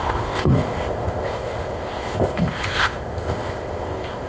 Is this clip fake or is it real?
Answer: fake